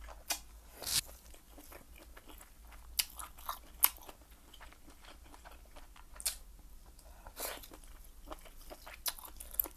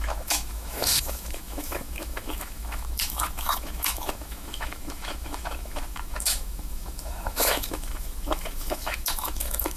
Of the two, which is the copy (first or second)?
second